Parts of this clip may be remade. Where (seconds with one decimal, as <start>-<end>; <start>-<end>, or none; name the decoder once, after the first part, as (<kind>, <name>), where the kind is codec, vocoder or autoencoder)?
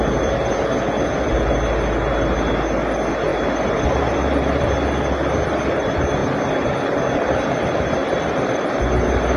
3.3-4.7 (vocoder, BigVGAN v2); 8.0-8.8